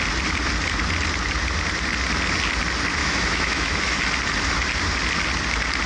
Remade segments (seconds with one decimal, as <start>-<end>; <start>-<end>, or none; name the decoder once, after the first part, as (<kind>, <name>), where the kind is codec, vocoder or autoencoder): 3.0-4.0 (autoencoder, DAC-VAE)